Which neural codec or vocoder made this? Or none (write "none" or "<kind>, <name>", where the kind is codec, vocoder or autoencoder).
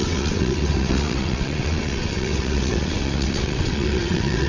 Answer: vocoder, WaveNeXt